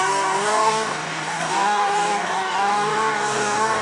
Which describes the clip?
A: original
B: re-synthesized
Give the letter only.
B